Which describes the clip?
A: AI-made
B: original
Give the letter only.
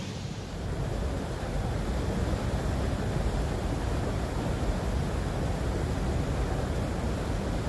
B